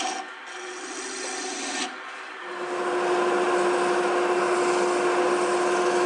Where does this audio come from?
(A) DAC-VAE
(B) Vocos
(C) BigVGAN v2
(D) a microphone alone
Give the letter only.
D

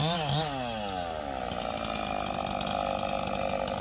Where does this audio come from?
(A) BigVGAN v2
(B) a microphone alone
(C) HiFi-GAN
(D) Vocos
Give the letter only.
B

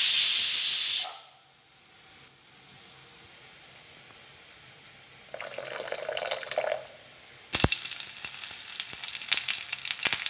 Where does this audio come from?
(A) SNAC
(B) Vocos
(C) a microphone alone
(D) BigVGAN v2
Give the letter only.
C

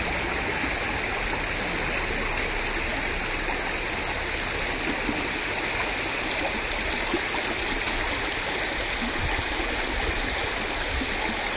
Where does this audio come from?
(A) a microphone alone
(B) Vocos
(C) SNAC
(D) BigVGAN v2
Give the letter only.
A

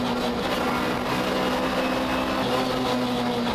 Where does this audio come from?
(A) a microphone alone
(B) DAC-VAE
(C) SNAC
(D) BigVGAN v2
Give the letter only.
A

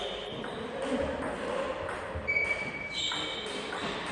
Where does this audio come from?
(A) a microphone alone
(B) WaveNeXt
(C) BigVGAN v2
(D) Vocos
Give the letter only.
A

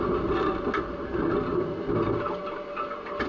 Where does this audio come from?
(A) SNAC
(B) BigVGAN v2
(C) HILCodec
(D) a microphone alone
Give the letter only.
D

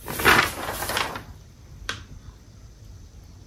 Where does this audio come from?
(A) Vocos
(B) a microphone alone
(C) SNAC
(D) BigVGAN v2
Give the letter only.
D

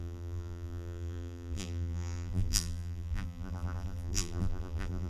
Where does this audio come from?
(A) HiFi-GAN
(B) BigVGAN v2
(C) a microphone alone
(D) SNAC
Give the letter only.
B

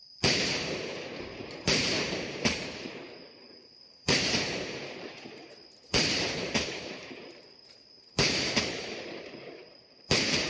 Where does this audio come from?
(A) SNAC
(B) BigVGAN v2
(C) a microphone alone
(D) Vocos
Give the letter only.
B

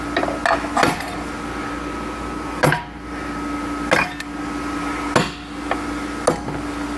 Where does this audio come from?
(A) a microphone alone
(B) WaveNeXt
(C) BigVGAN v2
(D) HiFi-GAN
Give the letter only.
A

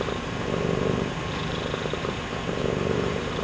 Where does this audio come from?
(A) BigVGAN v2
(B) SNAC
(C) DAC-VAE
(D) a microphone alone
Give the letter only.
A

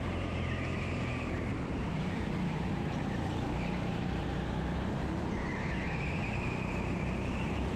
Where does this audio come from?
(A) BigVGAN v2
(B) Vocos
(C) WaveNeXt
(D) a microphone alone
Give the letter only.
A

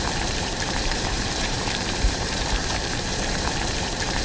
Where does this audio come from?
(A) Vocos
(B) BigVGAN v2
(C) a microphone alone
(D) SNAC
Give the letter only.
B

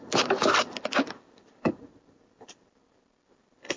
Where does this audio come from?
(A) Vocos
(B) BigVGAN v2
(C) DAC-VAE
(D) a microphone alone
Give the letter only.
B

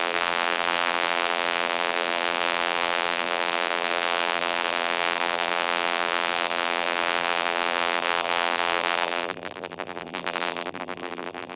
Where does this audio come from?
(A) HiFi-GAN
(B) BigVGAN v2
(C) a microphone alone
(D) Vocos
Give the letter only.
B